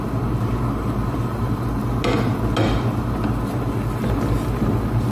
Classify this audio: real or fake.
real